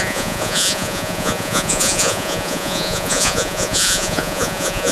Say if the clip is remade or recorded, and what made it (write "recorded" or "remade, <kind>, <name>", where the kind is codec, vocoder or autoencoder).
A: remade, vocoder, Vocos